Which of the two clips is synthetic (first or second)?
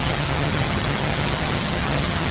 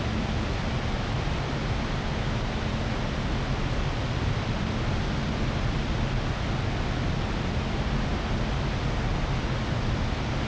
first